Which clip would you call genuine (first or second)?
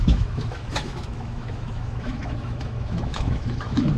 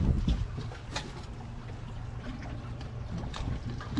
second